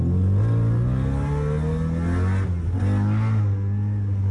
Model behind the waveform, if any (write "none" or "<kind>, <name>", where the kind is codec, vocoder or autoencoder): none